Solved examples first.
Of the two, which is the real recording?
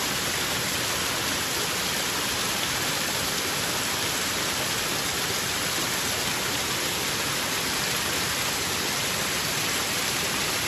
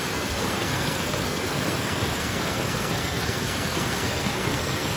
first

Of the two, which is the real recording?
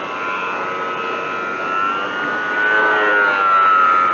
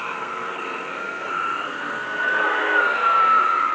first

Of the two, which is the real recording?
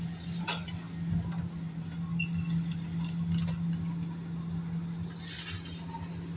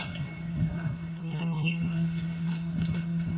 first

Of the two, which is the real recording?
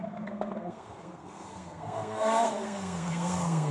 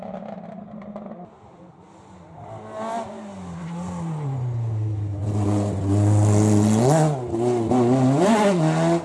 second